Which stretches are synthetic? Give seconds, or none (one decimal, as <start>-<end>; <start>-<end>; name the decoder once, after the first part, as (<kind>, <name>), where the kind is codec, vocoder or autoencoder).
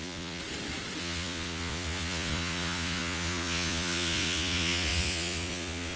0.0-0.4 (vocoder, Vocos); 1.0-6.0